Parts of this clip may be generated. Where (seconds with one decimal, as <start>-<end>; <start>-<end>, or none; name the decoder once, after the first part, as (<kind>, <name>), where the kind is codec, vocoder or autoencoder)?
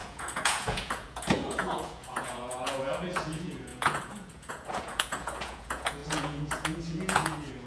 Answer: 0.0-7.7 (vocoder, Vocos)